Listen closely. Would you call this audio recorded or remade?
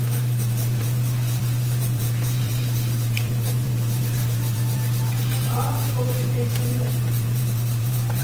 remade